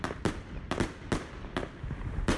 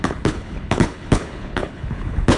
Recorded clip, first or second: first